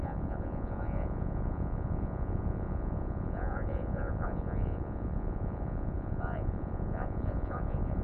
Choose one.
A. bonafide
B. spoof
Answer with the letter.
B